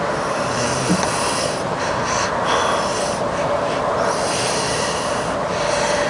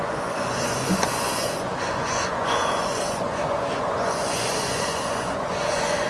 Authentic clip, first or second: first